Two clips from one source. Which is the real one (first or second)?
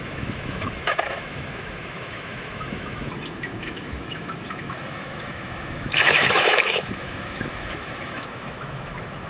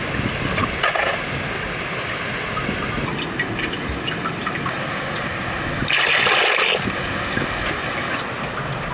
second